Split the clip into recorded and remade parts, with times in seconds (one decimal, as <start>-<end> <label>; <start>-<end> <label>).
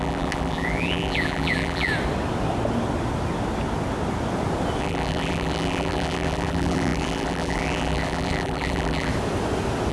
0.0-1.9 remade; 1.9-4.8 recorded; 4.8-9.1 remade; 9.1-9.9 recorded